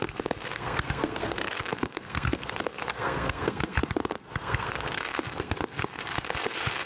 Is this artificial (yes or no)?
yes